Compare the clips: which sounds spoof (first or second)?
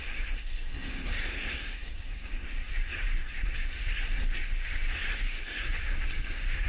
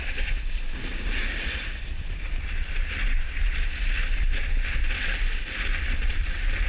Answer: first